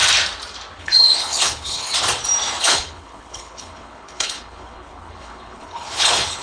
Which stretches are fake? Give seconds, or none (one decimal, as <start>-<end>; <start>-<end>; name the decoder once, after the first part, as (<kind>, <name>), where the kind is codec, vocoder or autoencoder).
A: 0.8-1.9 (codec, HILCodec); 2.6-6.4

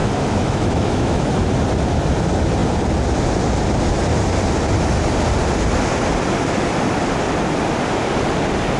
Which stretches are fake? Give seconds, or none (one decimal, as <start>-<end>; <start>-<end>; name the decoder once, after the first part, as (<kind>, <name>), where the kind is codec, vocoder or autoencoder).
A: 0.0-1.3 (autoencoder, DAC-VAE)

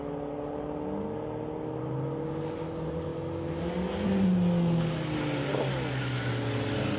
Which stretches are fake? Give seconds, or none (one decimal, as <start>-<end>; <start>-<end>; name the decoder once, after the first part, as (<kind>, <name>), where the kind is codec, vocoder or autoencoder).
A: none

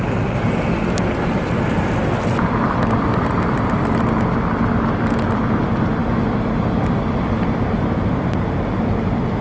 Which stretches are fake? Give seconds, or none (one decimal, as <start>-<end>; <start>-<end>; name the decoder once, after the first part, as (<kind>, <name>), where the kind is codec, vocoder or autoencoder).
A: none